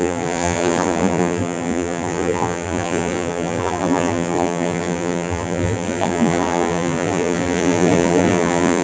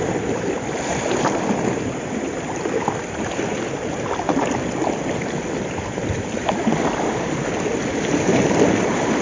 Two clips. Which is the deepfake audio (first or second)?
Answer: first